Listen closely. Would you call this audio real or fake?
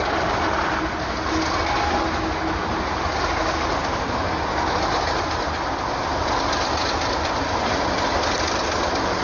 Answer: real